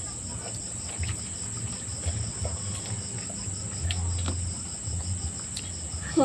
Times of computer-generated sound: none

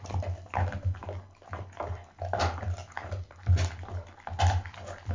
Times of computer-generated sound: none

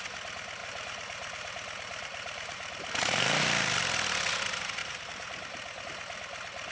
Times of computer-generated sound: 0.6-3.4 (vocoder, BigVGAN v2); 4.8-5.8

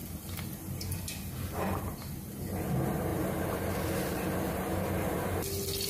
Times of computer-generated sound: 0.0-1.8 (vocoder, BigVGAN v2); 3.1-5.1

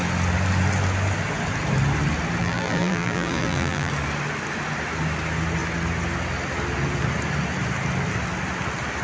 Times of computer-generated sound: 2.4-3.9 (vocoder, BigVGAN v2)